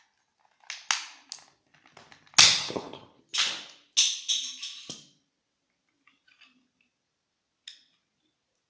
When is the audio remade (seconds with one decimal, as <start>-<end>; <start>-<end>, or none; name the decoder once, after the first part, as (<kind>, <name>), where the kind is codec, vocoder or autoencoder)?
2.6-3.2 (codec, HILCodec)